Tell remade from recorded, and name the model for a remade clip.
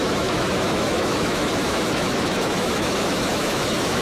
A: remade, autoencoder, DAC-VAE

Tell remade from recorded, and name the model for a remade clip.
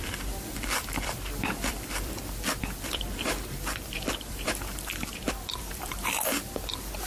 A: remade, vocoder, BigVGAN v2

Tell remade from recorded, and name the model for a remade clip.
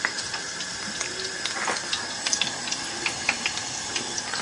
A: recorded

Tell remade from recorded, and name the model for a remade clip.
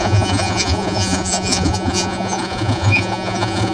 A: remade, vocoder, Vocos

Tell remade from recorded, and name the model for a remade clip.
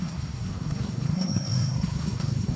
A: remade, codec, SNAC